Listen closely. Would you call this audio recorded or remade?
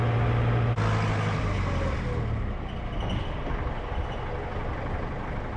recorded